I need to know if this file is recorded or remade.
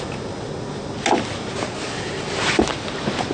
recorded